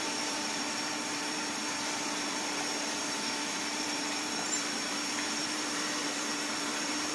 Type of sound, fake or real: fake